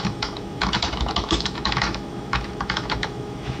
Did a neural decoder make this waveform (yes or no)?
yes